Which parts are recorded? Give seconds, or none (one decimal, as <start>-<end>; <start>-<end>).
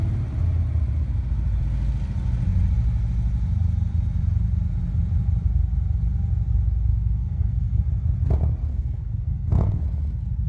0.0-6.9; 7.8-8.7; 9.8-10.5